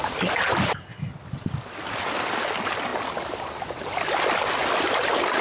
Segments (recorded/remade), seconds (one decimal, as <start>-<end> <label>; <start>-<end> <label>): 0.0-5.4 recorded